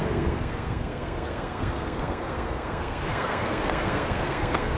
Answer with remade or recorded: remade